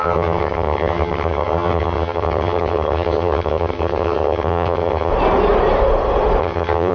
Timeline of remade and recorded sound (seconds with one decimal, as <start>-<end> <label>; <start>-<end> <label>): 0.0-5.1 remade; 5.1-6.4 recorded; 6.4-6.9 remade